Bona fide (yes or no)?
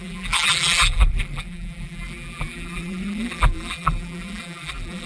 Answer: no